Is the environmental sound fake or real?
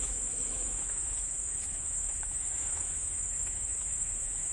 fake